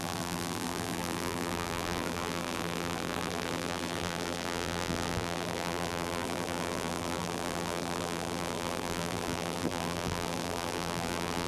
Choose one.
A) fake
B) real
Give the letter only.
A